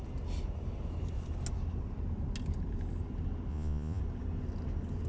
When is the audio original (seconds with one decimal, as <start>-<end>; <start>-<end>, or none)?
0.0-3.5; 4.0-5.1